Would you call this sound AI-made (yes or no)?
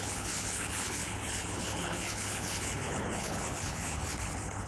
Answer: yes